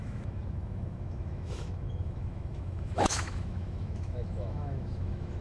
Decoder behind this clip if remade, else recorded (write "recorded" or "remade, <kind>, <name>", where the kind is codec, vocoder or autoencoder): remade, autoencoder, DAC-VAE